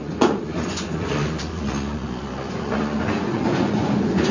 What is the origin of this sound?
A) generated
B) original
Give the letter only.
A